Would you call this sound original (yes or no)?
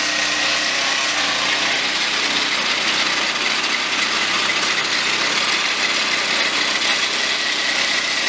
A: yes